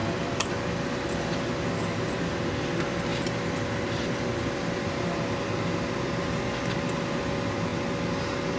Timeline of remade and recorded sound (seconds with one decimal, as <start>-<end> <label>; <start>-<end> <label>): 0.0-8.6 recorded